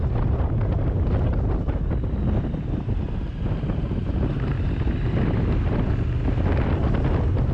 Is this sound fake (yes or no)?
no